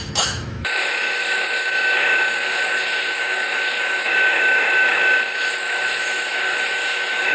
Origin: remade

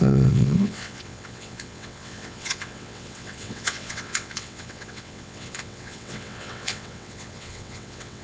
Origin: remade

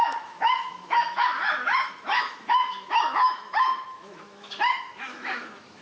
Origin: remade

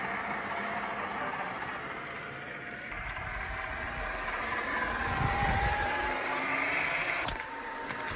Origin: recorded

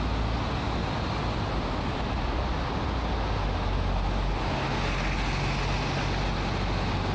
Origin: recorded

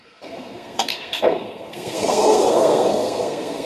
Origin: remade